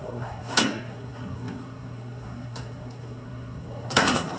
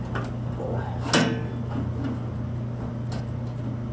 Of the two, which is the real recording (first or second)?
second